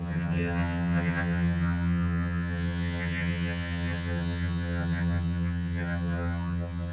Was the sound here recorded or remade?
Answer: remade